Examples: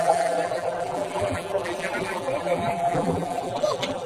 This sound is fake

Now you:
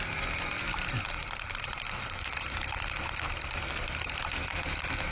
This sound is fake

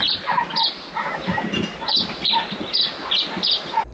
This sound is real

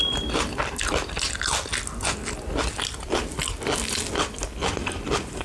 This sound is real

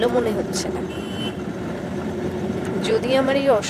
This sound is fake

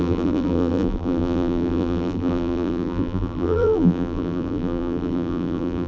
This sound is fake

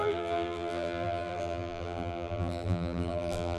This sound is fake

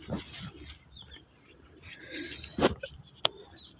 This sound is real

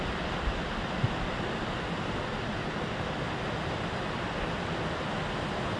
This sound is real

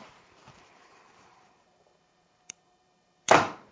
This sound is fake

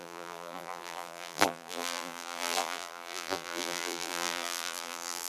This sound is fake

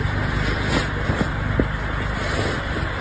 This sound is fake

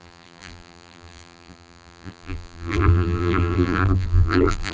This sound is fake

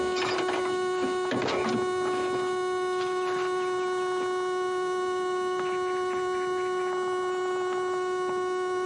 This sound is real